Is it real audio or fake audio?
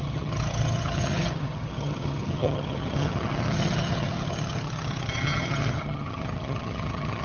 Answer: fake